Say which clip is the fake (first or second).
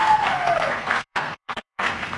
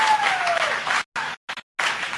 first